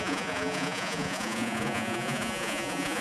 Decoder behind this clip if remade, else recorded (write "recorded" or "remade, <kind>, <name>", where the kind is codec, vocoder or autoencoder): remade, vocoder, Vocos